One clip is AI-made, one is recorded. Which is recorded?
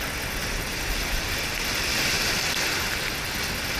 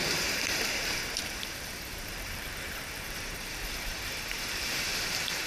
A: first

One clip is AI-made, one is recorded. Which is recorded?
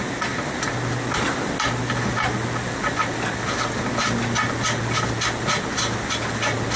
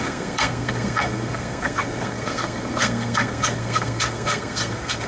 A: first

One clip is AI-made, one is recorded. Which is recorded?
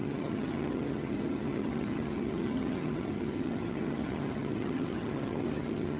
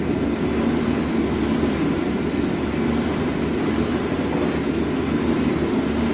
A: second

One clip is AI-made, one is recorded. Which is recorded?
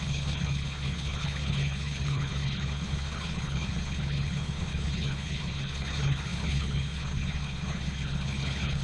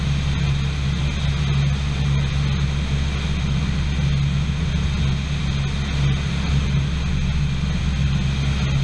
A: second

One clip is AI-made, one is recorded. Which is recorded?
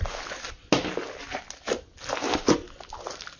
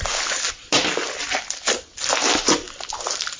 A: first